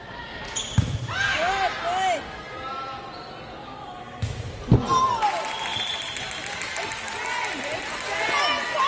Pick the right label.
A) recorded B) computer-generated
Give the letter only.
A